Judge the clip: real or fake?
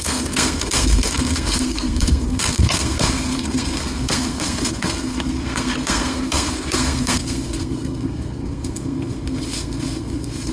fake